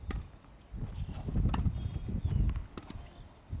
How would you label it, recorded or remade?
recorded